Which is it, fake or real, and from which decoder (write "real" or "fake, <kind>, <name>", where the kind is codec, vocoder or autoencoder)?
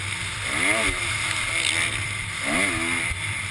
real